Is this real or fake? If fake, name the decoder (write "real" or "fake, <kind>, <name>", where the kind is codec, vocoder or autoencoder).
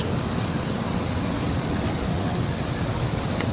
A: fake, vocoder, WaveNeXt